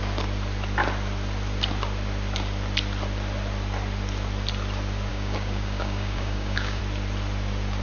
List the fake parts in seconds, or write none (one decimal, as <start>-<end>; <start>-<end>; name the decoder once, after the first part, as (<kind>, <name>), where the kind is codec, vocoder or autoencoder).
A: 5.1-6.8 (codec, DAC)